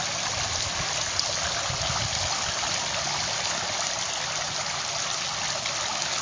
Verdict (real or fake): real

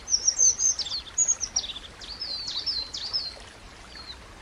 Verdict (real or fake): real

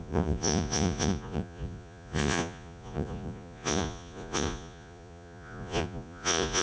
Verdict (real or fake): fake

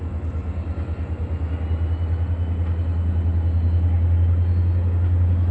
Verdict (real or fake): real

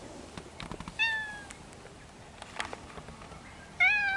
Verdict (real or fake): real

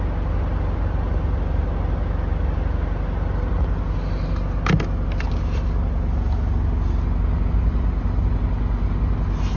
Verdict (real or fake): real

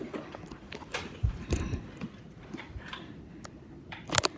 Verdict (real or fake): real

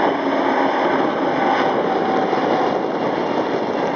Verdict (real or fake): real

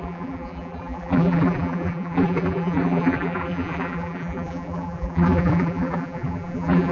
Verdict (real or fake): fake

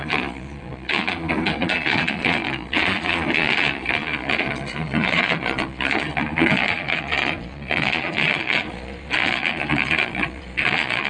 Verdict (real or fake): fake